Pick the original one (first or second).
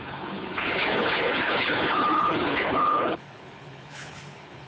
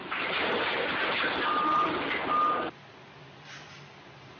second